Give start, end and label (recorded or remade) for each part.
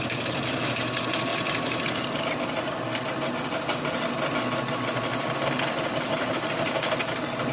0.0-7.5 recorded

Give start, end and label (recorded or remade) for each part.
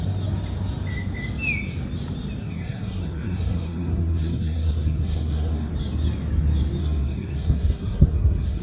0.0-2.4 recorded; 2.4-5.7 remade; 5.7-6.8 recorded; 6.8-8.6 remade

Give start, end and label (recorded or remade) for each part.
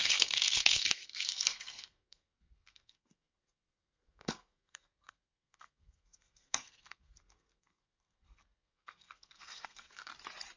0.0-10.1 remade; 10.1-10.6 recorded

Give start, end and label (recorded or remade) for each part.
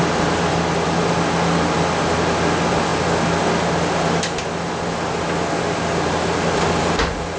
0.0-7.4 recorded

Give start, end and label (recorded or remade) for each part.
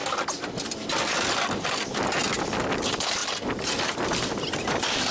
0.0-5.1 recorded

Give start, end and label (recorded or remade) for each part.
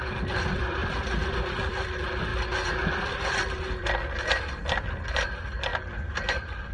0.0-5.7 remade; 5.7-6.7 recorded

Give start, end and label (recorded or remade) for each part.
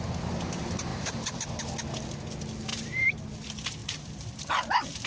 0.0-0.9 recorded; 0.9-1.4 remade; 1.4-2.7 recorded; 2.7-3.2 remade; 3.2-3.8 recorded; 3.8-5.1 remade